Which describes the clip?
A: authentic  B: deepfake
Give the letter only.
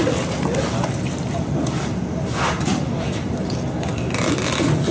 A